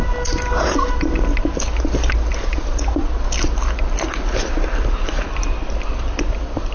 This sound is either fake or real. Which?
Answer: real